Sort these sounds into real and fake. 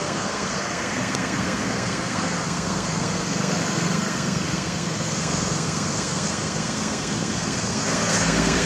fake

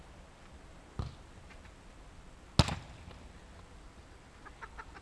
real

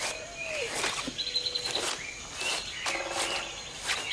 real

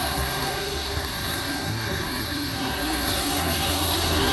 fake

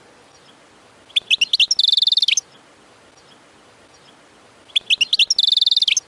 real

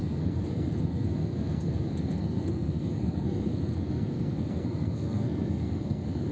fake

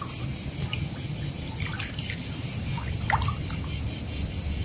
real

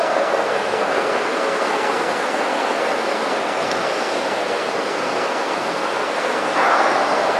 fake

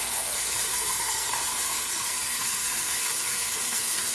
fake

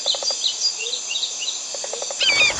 real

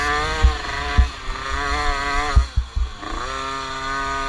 real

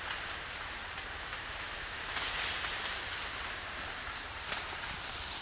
real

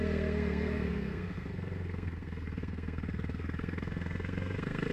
fake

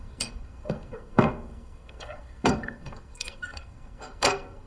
fake